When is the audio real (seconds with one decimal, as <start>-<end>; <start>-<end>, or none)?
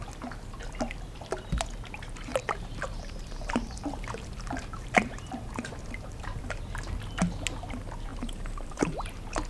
0.0-2.3; 6.6-8.1; 9.1-9.5